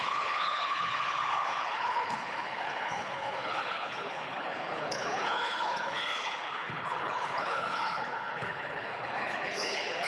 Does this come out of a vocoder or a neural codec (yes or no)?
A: yes